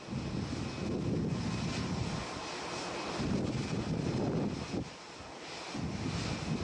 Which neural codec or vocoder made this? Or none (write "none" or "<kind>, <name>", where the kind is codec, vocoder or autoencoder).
none